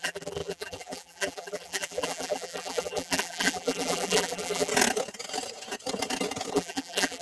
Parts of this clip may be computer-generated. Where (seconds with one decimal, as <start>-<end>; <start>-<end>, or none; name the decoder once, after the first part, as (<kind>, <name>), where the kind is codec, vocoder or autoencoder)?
0.0-4.7 (vocoder, BigVGAN v2); 6.5-7.2